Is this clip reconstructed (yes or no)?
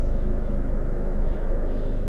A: yes